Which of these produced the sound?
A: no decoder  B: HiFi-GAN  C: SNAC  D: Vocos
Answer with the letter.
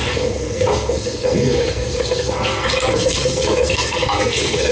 C